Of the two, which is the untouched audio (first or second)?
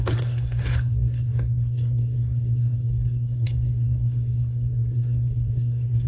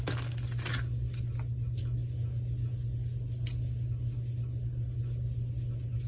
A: second